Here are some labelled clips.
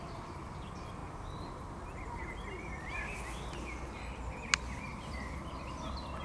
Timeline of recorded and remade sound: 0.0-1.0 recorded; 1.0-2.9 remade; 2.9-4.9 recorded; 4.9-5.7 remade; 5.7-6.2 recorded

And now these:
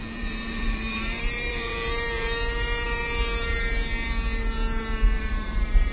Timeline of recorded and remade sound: 0.0-1.7 remade; 1.7-5.2 recorded; 5.2-5.9 remade

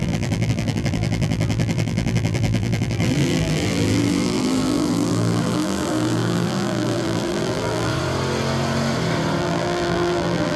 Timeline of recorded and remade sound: 0.0-7.9 remade; 7.9-9.4 recorded; 9.4-10.6 remade

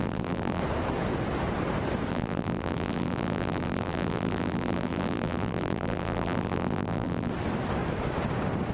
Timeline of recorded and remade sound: 0.0-0.6 remade; 0.6-2.1 recorded; 2.1-7.3 remade; 7.3-8.7 recorded

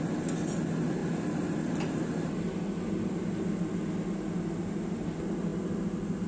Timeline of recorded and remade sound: 0.0-1.0 recorded; 1.0-2.4 remade; 2.4-6.3 recorded